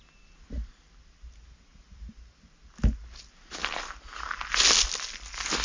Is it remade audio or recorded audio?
recorded